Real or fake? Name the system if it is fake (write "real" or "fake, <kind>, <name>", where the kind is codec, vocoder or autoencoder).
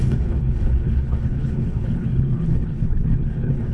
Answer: fake, codec, HILCodec